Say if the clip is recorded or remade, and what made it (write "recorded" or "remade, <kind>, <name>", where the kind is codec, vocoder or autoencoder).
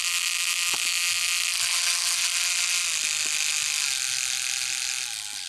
recorded